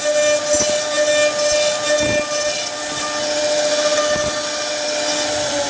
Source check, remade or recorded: recorded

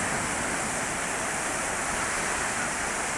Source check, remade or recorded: recorded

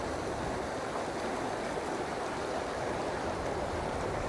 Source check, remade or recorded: recorded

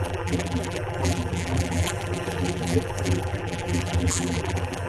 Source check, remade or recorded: remade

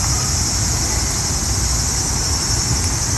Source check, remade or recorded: recorded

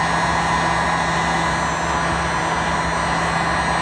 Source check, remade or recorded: recorded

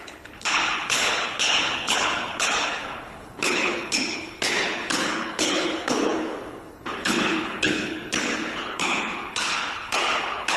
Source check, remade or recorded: remade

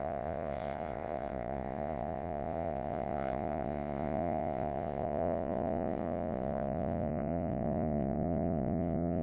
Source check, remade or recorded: remade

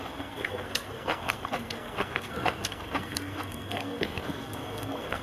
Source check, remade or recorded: remade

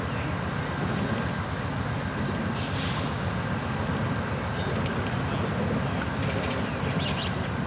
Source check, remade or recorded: recorded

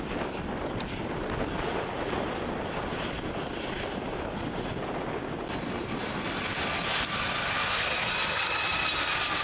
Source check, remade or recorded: recorded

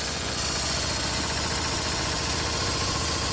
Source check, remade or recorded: remade